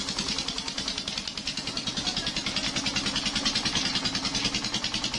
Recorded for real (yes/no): yes